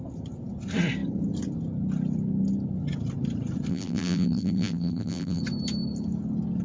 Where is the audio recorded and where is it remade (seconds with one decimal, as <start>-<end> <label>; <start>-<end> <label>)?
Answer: 0.0-3.7 recorded; 3.7-5.4 remade; 5.4-6.6 recorded